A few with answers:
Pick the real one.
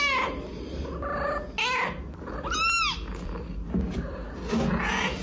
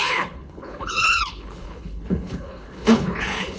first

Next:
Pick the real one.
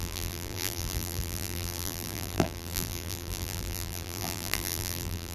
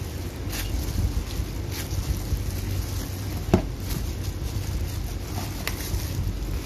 second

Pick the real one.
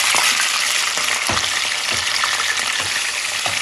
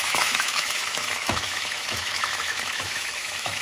first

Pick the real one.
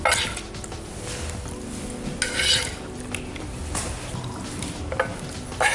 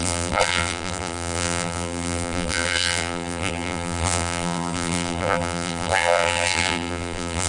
first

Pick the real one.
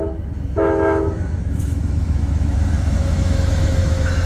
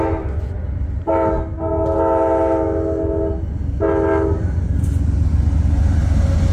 second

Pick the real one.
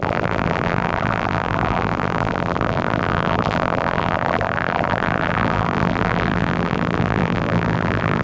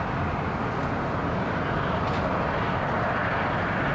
second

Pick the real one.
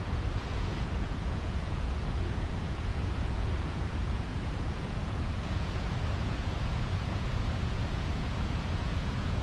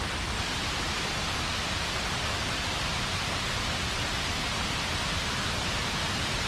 second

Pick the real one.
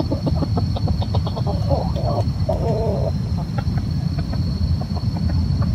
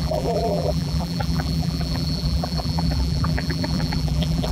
first